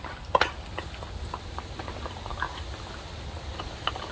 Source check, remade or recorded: recorded